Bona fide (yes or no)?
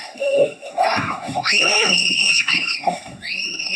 no